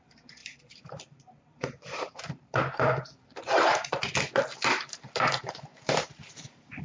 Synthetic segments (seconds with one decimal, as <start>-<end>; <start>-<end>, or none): 0.4-4.1; 5.7-6.8